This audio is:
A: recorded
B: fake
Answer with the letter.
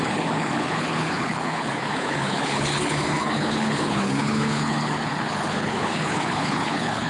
B